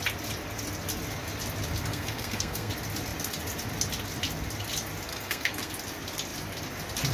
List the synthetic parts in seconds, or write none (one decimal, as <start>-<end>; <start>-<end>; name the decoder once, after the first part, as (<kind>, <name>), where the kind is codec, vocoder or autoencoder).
1.9-2.7 (codec, SNAC); 5.1-5.7